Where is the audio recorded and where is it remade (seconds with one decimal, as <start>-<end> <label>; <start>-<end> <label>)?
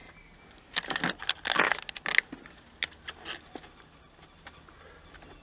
0.0-5.4 recorded